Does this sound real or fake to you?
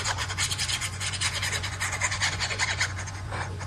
fake